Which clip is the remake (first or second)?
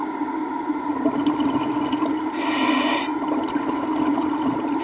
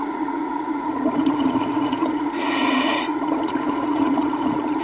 second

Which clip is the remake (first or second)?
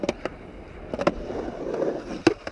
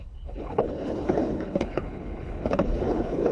second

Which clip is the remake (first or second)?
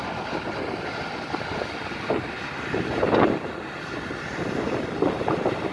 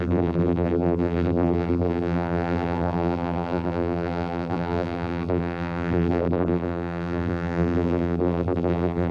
second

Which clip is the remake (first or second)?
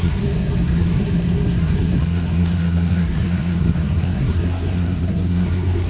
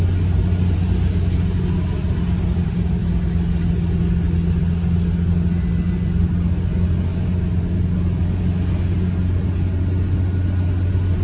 first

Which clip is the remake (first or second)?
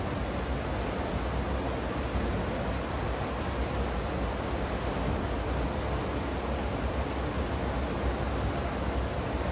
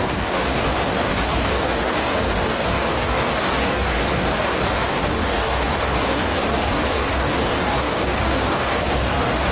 second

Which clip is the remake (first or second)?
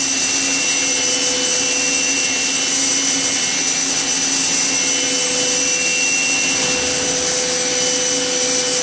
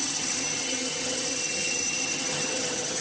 second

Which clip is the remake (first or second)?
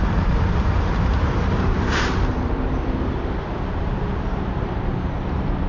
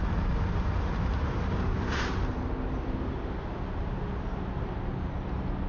first